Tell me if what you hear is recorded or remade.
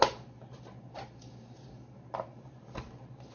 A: recorded